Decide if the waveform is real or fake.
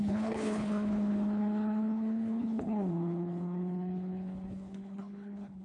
fake